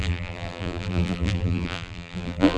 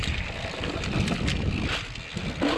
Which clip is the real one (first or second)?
second